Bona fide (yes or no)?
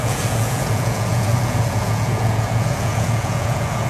no